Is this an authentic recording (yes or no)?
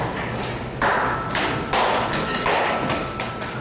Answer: yes